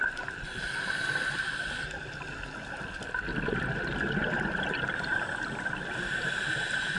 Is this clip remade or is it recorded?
recorded